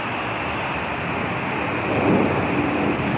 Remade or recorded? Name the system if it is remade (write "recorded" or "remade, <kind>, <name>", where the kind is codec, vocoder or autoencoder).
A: recorded